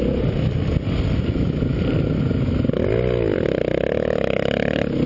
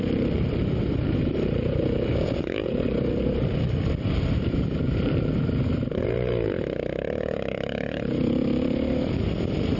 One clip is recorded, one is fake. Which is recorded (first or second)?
first